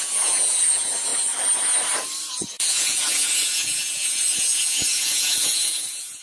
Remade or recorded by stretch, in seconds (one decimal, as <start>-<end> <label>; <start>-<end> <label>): 0.0-1.1 remade; 1.1-2.3 recorded; 2.3-6.2 remade